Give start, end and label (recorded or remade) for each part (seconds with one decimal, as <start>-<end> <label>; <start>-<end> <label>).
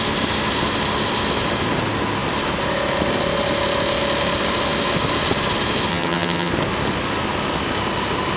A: 0.0-5.9 recorded; 5.9-6.5 remade; 6.5-8.4 recorded